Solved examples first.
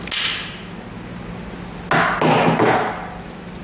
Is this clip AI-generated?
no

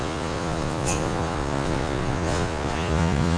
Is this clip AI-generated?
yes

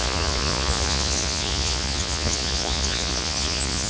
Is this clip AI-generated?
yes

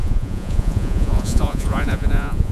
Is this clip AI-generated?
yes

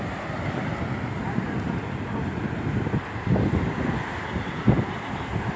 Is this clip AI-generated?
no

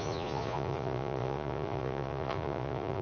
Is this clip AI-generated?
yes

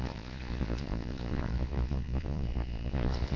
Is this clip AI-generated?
yes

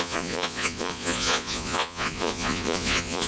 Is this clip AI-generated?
yes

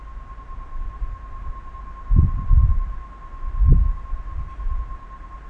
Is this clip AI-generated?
no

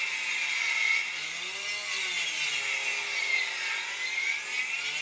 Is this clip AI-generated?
no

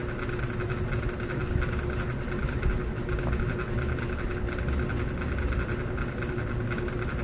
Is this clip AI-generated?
no